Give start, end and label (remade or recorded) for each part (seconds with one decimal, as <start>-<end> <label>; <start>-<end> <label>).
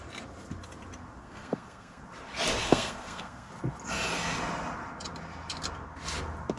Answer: 0.0-1.2 recorded; 1.2-2.0 remade; 2.0-2.6 recorded; 2.6-3.5 remade; 3.5-6.6 recorded